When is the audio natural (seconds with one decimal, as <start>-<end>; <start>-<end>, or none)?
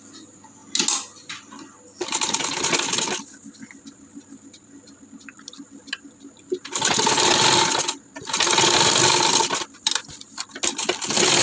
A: 0.0-11.4